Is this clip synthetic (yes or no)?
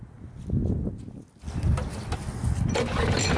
no